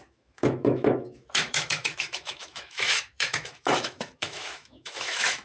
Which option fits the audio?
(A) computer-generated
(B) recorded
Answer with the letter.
A